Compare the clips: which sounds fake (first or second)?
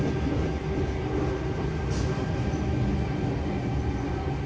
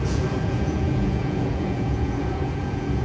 second